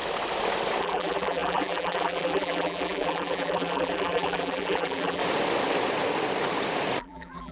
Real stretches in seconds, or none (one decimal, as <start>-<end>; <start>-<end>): 0.0-0.8; 5.2-7.0